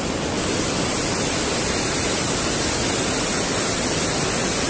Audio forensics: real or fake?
real